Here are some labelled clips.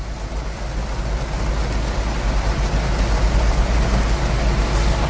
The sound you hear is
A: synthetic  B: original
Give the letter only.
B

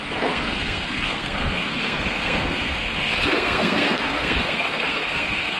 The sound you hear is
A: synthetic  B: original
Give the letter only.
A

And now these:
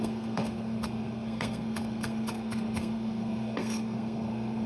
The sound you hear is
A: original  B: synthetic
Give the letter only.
B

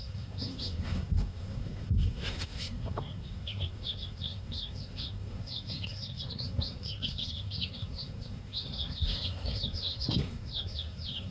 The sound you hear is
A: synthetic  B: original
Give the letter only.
A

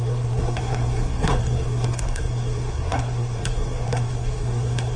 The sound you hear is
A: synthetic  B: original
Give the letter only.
A